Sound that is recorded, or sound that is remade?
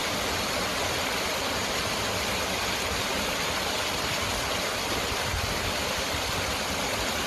recorded